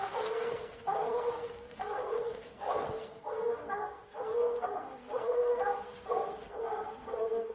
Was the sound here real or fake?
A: fake